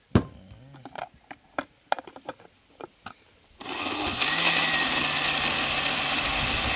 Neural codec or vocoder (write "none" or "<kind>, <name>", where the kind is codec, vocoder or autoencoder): none